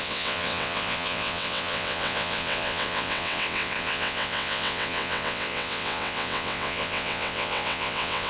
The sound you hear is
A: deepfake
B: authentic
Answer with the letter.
A